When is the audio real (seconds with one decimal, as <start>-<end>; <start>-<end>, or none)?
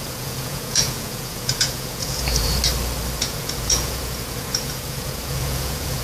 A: 2.6-3.2